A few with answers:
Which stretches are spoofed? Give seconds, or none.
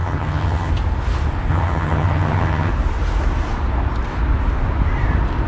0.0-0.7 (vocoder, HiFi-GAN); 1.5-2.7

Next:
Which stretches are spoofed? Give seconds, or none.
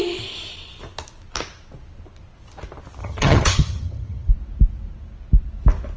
3.0-4.3 (vocoder, HiFi-GAN)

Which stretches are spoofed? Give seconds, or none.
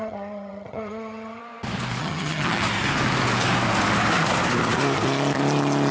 0.0-1.4 (vocoder, HiFi-GAN); 2.0-2.6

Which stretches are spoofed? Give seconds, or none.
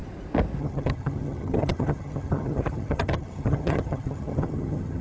0.6-5.0 (vocoder, HiFi-GAN)